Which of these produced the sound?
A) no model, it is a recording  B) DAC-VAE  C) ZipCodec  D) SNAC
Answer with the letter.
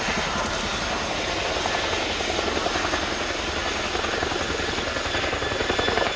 A